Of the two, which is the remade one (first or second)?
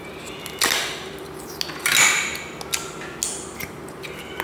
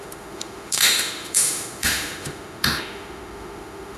second